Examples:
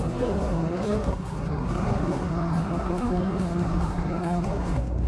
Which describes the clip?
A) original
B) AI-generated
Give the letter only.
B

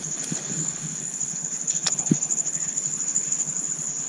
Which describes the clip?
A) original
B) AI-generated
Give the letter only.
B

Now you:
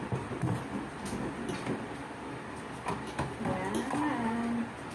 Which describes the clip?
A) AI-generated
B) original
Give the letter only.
B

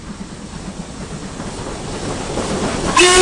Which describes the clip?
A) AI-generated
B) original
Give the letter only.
B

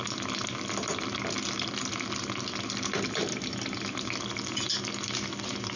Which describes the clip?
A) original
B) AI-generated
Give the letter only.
A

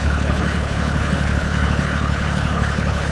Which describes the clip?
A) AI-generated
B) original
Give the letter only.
A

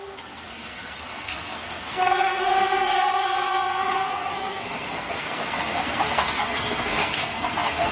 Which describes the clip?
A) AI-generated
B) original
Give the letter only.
A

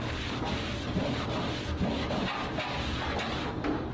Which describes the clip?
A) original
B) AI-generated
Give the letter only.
A